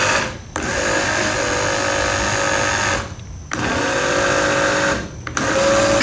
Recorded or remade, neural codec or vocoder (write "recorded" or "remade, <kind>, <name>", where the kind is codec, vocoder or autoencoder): recorded